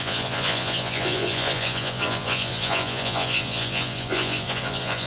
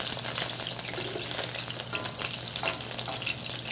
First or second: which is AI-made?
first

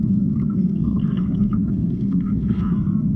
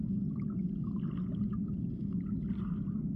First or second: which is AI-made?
first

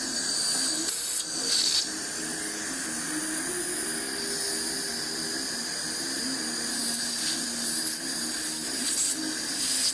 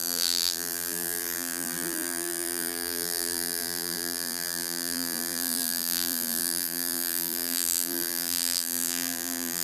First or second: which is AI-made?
second